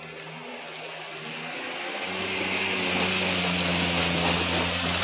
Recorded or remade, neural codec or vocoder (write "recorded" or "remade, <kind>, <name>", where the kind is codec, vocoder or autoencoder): recorded